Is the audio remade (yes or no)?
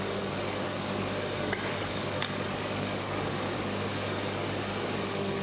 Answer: yes